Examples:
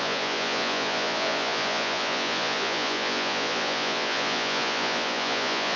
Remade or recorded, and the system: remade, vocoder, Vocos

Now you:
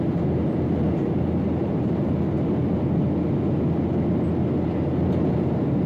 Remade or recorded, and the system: recorded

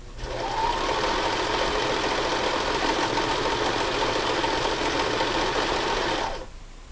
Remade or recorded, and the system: recorded